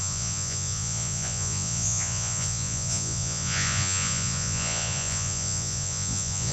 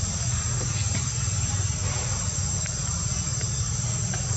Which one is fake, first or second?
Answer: first